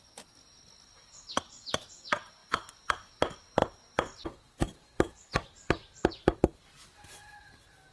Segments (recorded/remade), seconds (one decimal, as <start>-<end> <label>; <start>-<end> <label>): 0.0-7.9 recorded